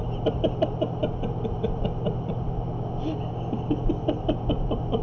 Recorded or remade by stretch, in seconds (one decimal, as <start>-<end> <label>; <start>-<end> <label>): 0.0-5.0 recorded